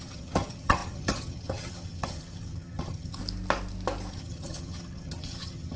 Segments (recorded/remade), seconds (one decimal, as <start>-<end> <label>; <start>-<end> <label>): 0.0-3.2 remade; 3.2-4.1 recorded; 4.1-5.8 remade